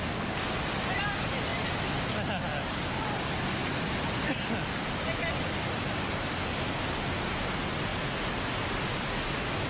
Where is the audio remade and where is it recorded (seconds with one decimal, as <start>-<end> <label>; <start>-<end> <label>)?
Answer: 0.0-9.7 recorded